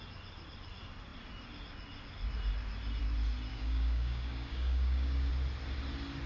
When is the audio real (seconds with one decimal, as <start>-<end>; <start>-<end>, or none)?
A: 0.0-3.5; 5.3-6.3